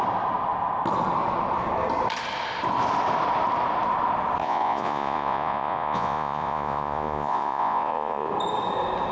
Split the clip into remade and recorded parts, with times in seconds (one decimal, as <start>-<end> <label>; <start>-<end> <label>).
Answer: 0.0-4.4 recorded; 4.4-8.3 remade; 8.3-9.1 recorded